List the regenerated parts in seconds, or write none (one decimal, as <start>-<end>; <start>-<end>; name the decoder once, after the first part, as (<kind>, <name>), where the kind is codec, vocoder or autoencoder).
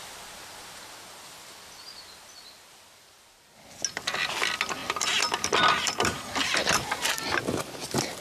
4.8-7.4 (vocoder, BigVGAN v2)